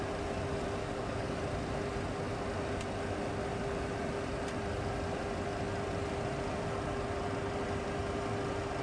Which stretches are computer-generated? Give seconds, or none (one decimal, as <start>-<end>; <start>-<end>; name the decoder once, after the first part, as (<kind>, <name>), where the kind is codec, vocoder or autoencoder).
0.8-1.4 (codec, DAC)